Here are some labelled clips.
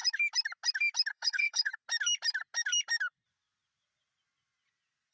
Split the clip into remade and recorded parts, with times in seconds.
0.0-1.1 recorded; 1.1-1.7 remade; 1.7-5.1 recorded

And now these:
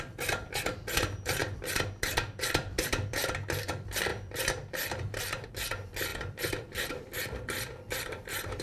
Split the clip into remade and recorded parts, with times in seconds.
0.0-1.4 remade; 1.4-2.4 recorded; 2.4-8.6 remade